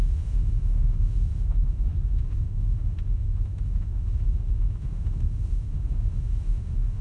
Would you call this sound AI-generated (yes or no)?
yes